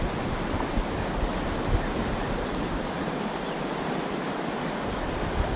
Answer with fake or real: real